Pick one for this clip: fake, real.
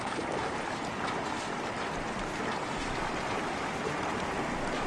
real